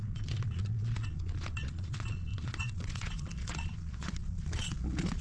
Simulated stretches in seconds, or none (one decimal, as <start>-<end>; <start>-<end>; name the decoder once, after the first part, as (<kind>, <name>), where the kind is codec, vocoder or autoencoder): 0.0-5.2 (vocoder, Vocos)